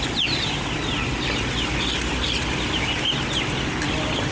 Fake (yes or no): no